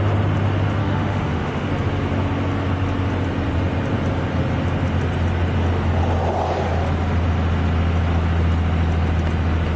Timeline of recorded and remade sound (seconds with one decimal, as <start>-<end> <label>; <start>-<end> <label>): 0.0-0.8 recorded; 0.8-1.7 remade; 1.7-9.8 recorded